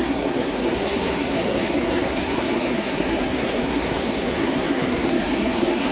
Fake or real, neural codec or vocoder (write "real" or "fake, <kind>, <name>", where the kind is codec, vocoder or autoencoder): fake, codec, SNAC